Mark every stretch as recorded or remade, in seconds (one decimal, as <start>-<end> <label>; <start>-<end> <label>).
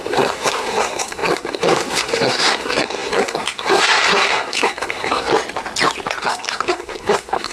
0.0-5.3 remade; 5.3-6.2 recorded; 6.2-7.5 remade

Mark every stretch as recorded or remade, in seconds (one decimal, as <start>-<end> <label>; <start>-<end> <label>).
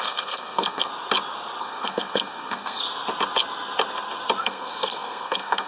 0.0-0.9 remade; 0.9-1.6 recorded; 1.6-2.8 remade; 2.8-4.4 recorded; 4.4-5.7 remade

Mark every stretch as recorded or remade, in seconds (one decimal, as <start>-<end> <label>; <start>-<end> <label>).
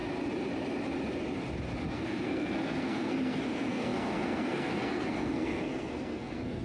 0.0-1.9 recorded; 1.9-6.6 remade